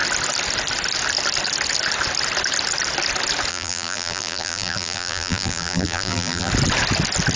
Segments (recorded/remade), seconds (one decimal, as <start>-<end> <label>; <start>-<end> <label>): 0.0-3.5 recorded; 3.5-6.5 remade; 6.5-7.4 recorded